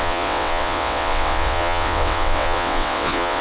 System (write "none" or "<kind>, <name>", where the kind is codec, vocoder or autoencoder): vocoder, WaveNeXt